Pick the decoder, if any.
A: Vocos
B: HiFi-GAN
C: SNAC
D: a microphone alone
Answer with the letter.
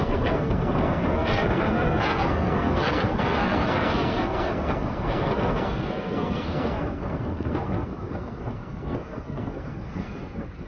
C